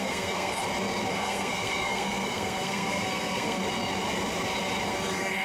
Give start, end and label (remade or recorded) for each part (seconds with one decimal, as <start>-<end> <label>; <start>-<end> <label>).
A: 0.0-0.6 remade; 0.6-1.1 recorded; 1.1-3.6 remade; 3.6-4.9 recorded; 4.9-5.4 remade